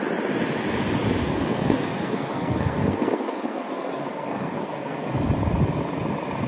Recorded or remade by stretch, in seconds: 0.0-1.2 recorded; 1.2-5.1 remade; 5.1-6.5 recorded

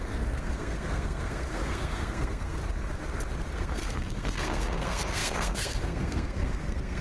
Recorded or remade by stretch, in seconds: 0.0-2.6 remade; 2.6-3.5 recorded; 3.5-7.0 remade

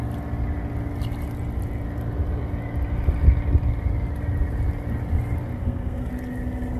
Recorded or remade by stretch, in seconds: 0.0-5.6 recorded; 5.6-6.1 remade; 6.1-6.8 recorded

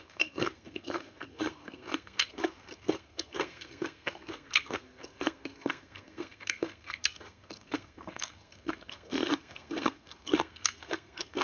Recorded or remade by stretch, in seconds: 0.0-11.4 remade

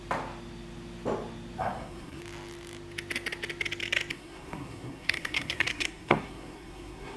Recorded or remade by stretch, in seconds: 0.0-1.6 recorded; 1.6-2.2 remade; 2.2-4.1 recorded; 4.1-7.2 remade

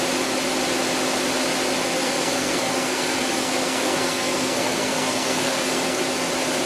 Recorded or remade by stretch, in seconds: 0.0-2.0 recorded; 2.0-6.0 remade; 6.0-6.7 recorded